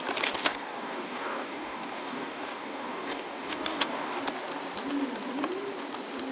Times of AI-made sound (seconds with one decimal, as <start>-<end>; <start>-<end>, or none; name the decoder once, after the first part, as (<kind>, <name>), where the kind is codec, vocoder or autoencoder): 0.4-4.2 (codec, DAC)